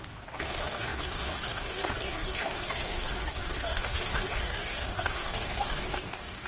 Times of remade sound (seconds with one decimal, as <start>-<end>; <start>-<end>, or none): 0.0-6.5